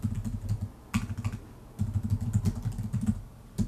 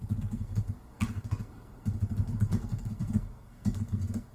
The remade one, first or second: second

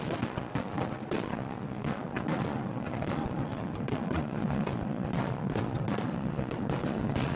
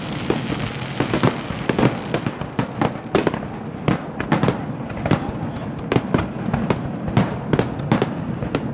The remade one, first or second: first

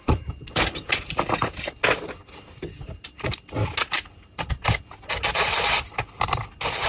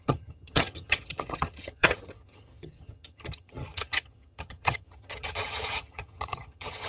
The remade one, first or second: second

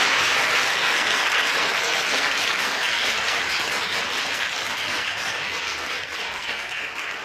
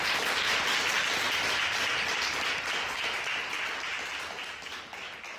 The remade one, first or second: first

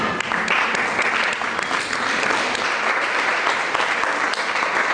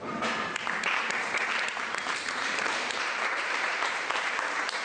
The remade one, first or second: second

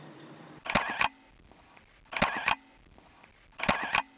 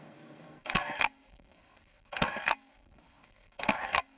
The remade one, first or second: second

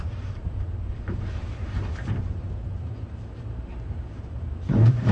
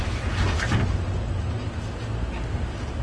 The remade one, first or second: first